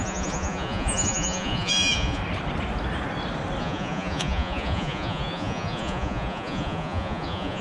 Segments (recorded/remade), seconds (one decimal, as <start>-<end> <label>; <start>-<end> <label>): 0.0-2.2 remade; 2.2-3.6 recorded; 3.6-7.6 remade